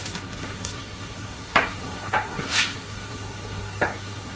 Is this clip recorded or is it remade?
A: remade